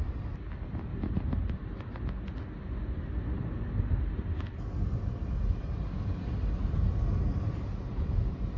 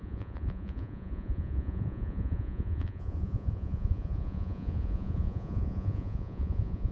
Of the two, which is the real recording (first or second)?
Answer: first